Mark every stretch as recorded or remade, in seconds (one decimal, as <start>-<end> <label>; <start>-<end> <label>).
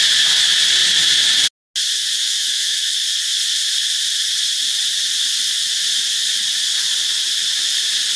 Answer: 0.0-2.2 recorded; 2.2-2.9 remade; 2.9-8.2 recorded